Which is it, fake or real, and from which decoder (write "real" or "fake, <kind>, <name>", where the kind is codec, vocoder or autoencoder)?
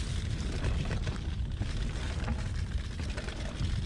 real